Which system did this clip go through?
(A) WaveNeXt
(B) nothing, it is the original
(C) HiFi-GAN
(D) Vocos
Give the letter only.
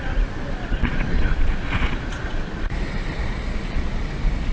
D